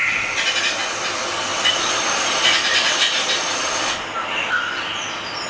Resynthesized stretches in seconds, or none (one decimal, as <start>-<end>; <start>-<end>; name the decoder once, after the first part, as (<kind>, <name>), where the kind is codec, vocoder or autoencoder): 1.5-3.7 (vocoder, BigVGAN v2)